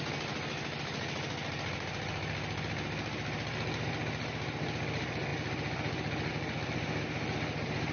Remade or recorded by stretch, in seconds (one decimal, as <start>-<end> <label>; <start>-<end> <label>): 0.0-7.9 recorded